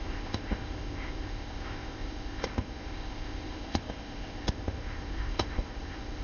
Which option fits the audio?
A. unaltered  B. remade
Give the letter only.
B